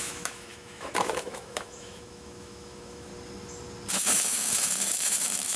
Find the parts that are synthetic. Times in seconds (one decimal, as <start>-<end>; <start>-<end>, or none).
0.0-3.1; 3.9-5.6